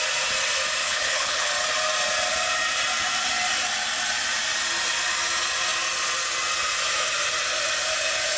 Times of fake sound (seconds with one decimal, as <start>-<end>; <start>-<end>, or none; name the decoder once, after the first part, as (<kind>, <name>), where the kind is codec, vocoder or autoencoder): 0.8-1.5 (codec, HILCodec)